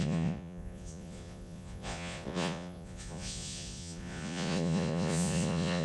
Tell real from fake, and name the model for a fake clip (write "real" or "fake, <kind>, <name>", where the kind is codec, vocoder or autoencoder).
fake, vocoder, Vocos